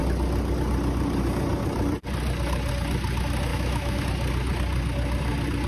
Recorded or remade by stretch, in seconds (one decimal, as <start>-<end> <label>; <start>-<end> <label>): 0.0-3.5 recorded; 3.5-4.0 remade; 4.0-5.7 recorded